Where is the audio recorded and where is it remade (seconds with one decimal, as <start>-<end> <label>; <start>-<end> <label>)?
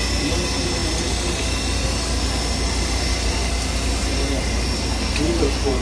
0.0-5.8 recorded